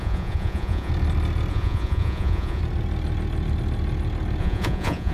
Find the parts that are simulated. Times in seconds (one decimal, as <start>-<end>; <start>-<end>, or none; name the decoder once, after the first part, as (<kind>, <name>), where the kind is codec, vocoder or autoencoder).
0.0-0.9 (vocoder, Vocos); 1.5-2.6; 4.4-5.1